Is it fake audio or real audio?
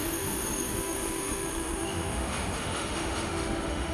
fake